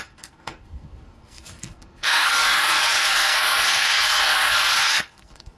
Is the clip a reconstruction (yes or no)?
yes